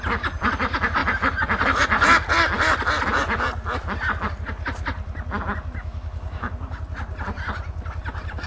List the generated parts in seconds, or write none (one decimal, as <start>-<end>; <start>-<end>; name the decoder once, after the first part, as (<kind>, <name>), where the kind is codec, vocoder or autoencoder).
5.8-6.5 (autoencoder, DAC-VAE)